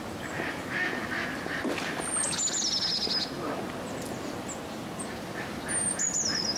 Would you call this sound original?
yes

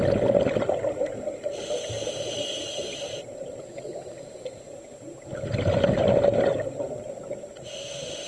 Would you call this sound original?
yes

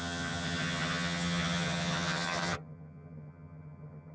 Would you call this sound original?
no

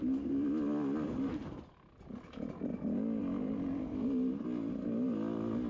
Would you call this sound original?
yes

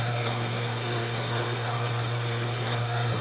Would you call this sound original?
no